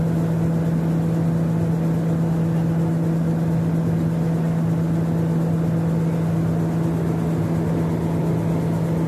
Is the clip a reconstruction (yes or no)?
no